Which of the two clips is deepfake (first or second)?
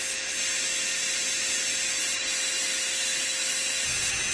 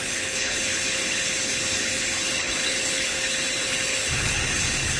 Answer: second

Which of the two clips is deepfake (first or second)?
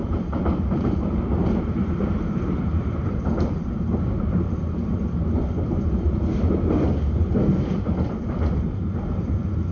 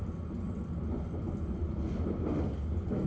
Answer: first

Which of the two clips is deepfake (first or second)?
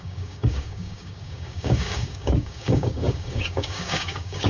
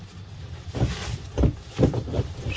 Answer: first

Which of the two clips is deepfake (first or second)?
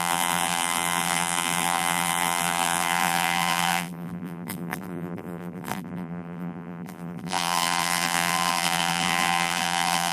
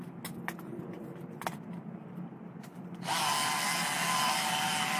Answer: first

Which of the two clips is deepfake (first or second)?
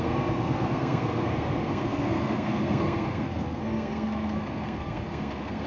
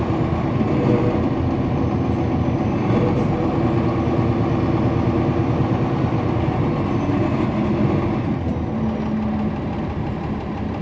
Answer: first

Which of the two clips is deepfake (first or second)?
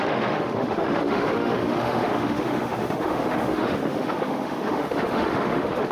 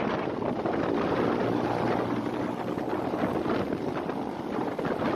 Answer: first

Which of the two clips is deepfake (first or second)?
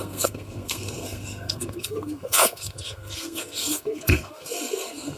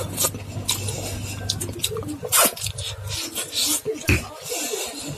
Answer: first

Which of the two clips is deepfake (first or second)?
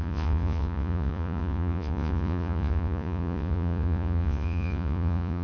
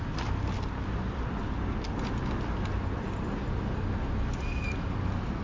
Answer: first